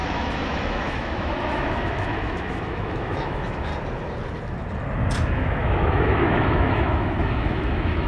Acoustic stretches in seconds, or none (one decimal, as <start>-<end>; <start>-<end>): 3.7-5.3